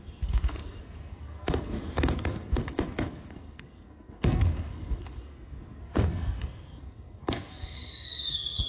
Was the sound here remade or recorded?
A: remade